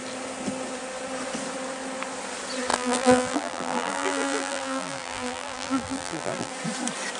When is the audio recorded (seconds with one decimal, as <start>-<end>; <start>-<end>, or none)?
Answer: 0.0-2.7; 6.5-7.2